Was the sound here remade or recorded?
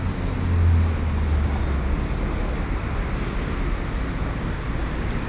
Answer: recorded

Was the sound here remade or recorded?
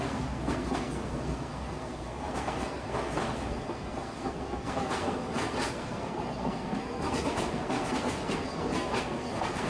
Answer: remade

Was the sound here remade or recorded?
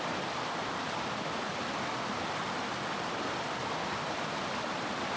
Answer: recorded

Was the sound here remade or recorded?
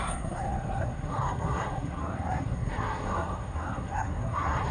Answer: remade